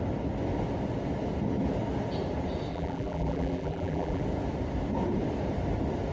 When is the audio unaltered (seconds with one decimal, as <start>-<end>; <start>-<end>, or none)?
0.0-2.7; 4.2-6.1